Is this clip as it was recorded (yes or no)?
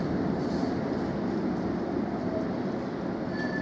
yes